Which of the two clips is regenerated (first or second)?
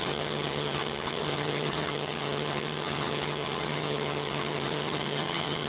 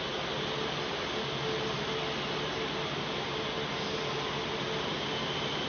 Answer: first